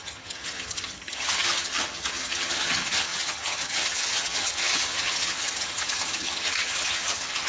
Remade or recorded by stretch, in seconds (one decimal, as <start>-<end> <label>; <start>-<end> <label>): 0.0-7.5 remade